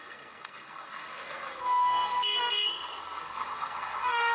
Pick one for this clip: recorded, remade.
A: remade